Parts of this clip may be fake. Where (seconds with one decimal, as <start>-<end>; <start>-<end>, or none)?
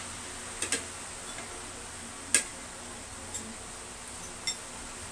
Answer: none